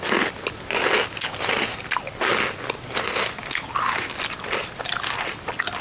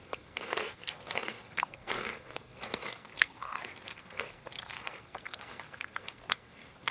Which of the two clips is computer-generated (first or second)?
second